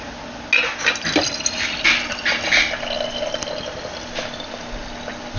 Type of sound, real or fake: real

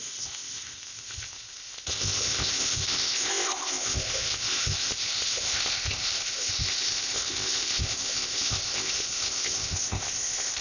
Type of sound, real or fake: fake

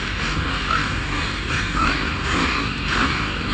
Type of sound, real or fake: fake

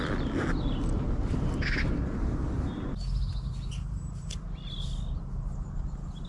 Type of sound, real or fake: real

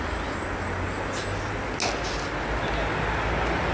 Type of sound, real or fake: real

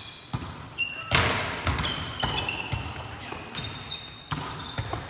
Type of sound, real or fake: real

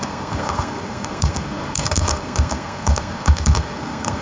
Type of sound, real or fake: fake